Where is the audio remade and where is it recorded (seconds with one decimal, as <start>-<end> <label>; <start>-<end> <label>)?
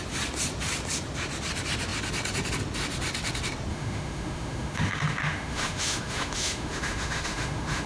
0.0-3.7 recorded; 3.7-7.9 remade